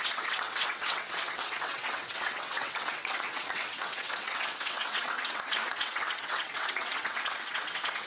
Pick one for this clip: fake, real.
fake